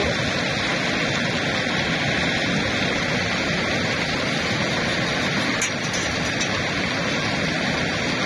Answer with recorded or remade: recorded